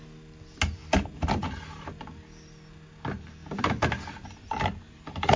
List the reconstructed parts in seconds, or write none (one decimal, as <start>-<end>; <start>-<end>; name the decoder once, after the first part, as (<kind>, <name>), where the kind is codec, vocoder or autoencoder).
none